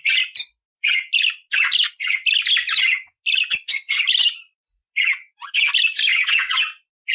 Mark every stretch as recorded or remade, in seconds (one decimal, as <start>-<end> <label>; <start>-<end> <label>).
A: 0.0-7.1 recorded